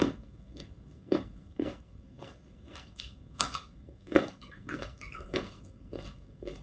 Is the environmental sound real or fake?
fake